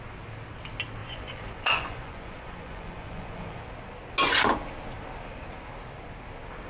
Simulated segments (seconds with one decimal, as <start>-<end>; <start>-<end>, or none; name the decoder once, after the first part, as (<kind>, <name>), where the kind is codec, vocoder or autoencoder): 1.0-3.6 (vocoder, Vocos)